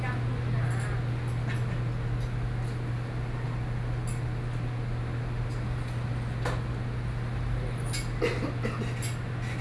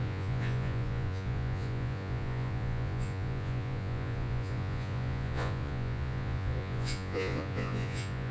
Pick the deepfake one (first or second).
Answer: second